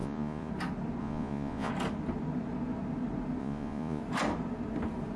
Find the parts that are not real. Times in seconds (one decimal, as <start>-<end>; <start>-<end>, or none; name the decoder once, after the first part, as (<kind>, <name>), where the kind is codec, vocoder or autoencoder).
0.0-0.5 (vocoder, Vocos); 1.0-1.7; 3.4-4.0